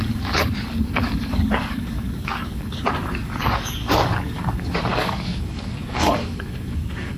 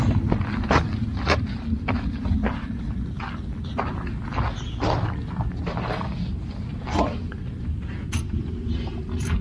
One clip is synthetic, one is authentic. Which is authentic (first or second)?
second